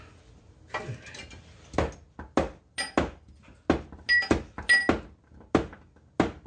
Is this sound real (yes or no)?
yes